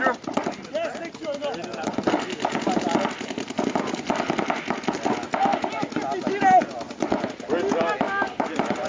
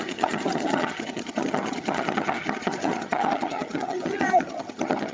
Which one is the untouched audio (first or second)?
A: first